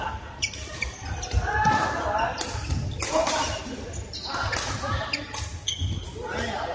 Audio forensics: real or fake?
real